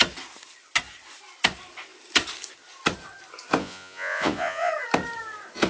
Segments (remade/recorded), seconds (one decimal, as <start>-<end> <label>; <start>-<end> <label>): 0.0-3.6 recorded; 3.6-4.7 remade; 4.7-5.7 recorded